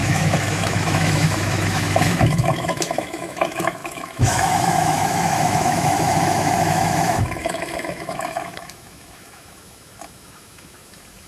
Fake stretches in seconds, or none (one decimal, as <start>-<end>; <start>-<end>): 0.0-11.3